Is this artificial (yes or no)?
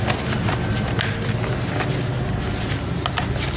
no